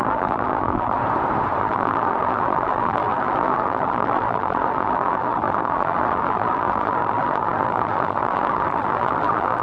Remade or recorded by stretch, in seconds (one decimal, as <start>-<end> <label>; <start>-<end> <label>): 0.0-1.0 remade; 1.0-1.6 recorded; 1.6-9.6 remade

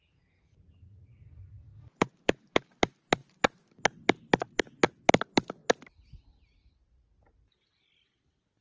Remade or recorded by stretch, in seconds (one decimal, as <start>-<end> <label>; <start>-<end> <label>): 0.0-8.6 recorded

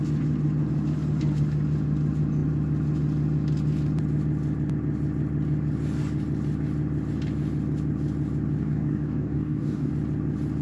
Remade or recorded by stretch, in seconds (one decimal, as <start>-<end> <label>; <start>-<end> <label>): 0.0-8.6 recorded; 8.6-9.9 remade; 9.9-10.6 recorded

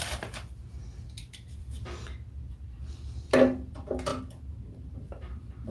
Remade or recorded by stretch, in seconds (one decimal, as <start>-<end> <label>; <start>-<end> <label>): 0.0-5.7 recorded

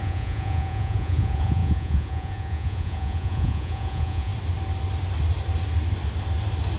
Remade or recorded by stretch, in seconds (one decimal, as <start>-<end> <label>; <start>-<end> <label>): 0.0-4.3 remade; 4.3-6.8 recorded

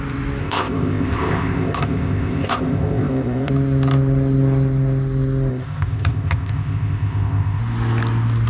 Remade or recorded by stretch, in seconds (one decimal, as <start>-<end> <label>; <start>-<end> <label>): 0.0-0.4 recorded; 0.4-3.5 remade; 3.5-5.5 recorded; 5.5-7.6 remade; 7.6-8.5 recorded

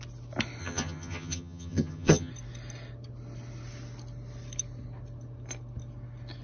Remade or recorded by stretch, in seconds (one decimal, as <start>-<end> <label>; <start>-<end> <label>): 0.0-0.6 recorded; 0.6-2.3 remade; 2.3-6.4 recorded